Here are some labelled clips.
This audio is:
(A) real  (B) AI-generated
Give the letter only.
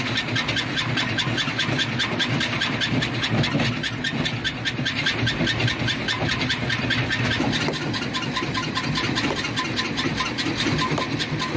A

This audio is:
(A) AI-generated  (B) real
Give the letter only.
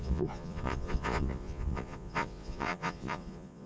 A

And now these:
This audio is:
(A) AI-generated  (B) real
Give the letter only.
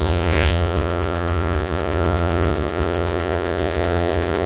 A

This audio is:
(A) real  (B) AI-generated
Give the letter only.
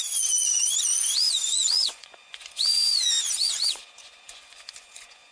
B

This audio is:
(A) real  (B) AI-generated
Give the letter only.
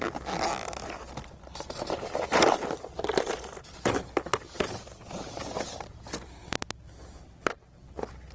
A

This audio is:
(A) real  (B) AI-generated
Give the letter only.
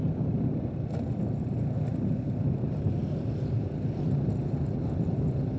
A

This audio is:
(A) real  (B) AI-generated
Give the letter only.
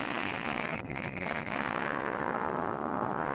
B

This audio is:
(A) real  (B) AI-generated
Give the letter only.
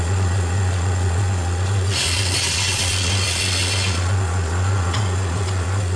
B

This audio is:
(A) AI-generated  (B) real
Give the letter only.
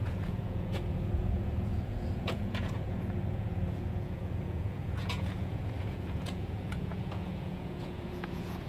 A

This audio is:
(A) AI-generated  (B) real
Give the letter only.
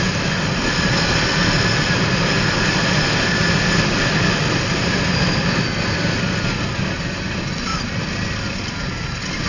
B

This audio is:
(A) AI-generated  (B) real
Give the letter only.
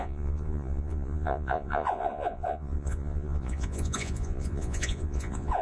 A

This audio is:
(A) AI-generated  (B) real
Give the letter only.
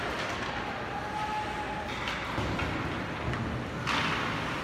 B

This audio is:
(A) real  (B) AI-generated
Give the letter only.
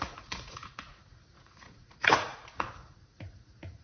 B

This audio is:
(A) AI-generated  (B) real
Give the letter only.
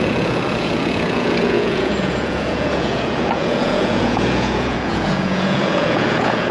A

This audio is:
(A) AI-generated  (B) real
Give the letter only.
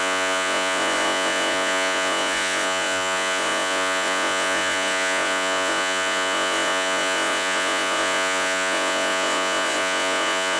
A